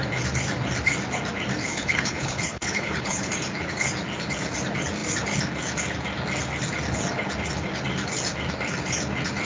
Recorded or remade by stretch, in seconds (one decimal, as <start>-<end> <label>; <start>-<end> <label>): 0.0-1.7 recorded; 1.7-3.3 remade; 3.3-9.4 recorded